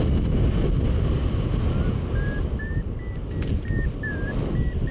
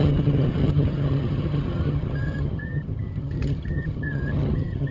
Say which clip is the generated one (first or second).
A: second